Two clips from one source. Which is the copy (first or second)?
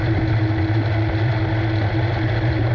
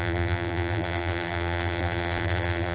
second